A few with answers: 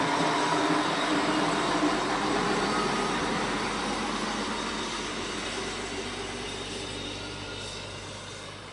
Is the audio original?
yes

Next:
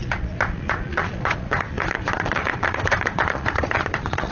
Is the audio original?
no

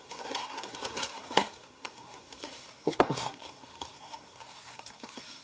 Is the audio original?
no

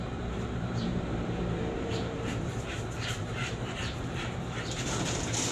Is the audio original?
no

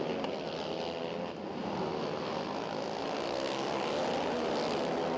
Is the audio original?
yes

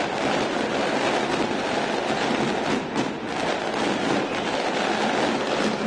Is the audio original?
no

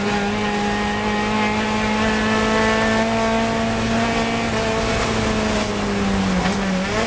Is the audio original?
yes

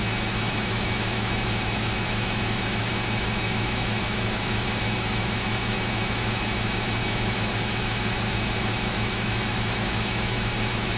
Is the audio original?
no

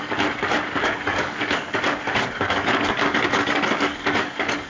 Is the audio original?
no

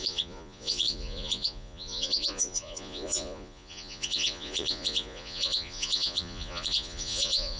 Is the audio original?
no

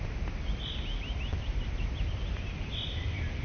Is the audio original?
yes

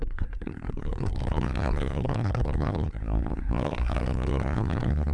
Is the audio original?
no